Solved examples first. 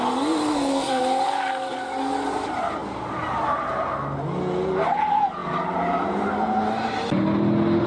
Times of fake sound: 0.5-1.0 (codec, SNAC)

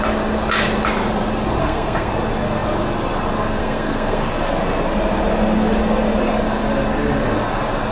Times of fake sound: 1.6-2.1 (codec, SNAC); 3.6-4.3

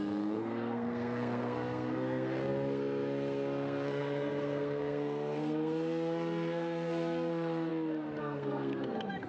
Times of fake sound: 0.0-7.7 (codec, SNAC); 8.2-9.3

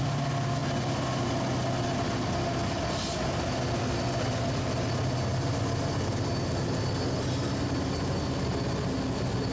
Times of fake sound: none

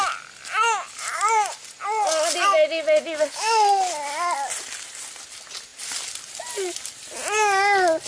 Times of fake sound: none

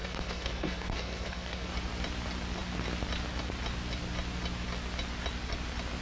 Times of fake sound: 0.0-1.7 (codec, SNAC)